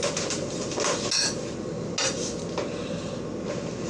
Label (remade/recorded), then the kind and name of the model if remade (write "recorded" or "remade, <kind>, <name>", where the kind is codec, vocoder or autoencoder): recorded